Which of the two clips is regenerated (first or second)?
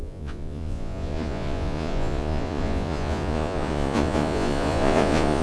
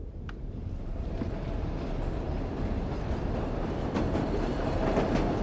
first